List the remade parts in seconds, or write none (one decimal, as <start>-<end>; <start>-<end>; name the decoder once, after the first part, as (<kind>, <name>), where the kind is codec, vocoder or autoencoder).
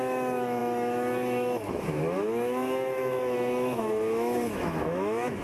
0.0-5.4 (autoencoder, DAC-VAE)